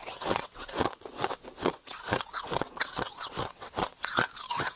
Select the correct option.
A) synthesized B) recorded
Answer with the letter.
A